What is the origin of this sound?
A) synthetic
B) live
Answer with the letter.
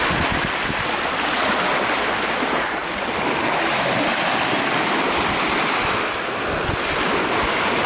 B